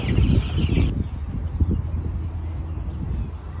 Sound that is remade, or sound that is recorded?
recorded